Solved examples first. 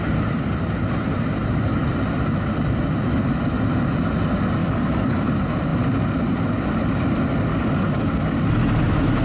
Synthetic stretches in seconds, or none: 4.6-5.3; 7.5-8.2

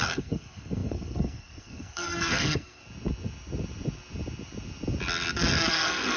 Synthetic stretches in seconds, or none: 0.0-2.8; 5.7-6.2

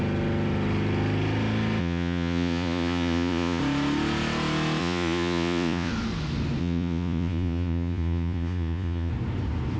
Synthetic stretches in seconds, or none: 1.8-3.6; 4.8-5.9; 6.6-9.1